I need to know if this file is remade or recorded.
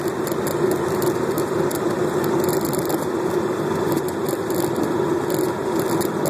recorded